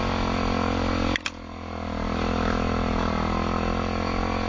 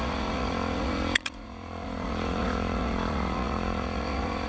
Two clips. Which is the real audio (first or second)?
first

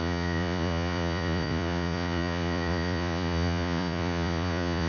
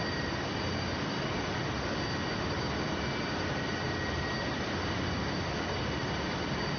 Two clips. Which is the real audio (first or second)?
second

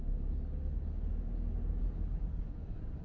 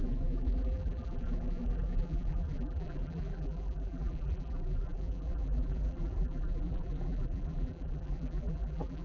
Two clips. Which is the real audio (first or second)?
first